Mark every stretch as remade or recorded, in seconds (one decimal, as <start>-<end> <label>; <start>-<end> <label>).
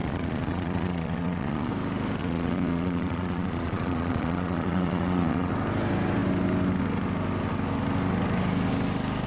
0.0-1.7 remade; 1.7-2.2 recorded; 2.2-5.5 remade; 5.5-9.3 recorded